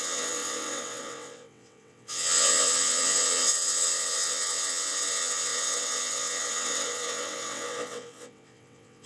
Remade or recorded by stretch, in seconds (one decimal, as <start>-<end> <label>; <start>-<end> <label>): 0.0-9.1 remade